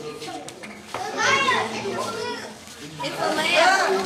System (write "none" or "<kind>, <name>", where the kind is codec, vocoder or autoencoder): codec, DAC